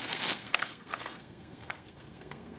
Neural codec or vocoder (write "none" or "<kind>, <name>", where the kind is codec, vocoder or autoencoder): codec, SNAC